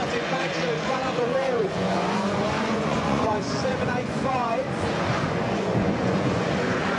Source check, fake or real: fake